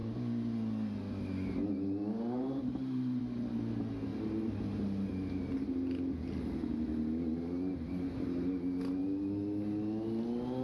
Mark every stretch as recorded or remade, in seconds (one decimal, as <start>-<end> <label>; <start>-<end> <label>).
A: 0.0-10.6 recorded